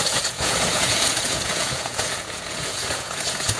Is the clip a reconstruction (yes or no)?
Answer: yes